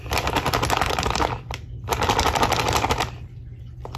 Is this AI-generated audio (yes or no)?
no